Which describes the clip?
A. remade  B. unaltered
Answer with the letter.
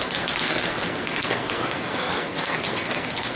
A